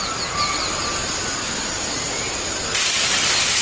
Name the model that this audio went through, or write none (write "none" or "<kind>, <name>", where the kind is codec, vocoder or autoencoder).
none